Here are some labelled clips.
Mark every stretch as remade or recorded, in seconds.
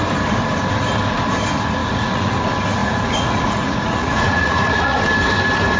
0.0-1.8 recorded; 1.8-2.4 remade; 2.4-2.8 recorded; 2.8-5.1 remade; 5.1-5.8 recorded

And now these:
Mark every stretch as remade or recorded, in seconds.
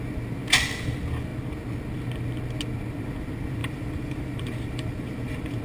0.0-3.6 recorded; 3.6-5.6 remade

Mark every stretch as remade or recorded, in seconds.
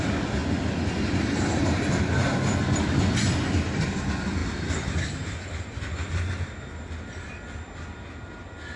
0.0-8.8 recorded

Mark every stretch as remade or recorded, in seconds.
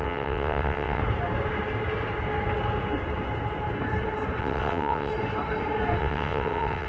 0.0-1.0 remade; 1.0-4.4 recorded; 4.4-5.1 remade; 5.1-6.0 recorded; 6.0-6.9 remade